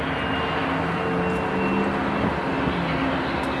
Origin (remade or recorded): recorded